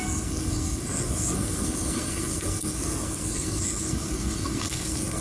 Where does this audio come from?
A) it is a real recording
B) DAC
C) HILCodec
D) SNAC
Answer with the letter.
D